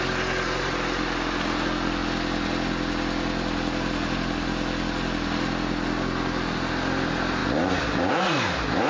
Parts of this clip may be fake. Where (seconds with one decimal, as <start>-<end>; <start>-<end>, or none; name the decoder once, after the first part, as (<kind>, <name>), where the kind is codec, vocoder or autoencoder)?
none